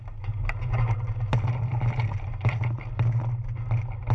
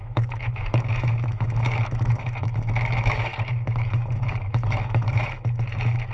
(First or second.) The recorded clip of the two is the first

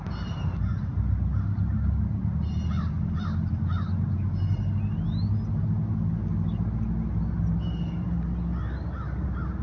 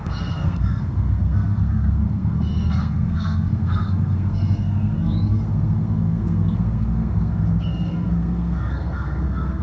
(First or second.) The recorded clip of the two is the first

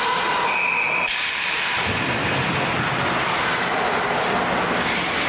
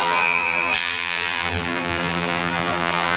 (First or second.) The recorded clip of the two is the first